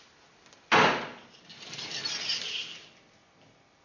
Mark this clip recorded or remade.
recorded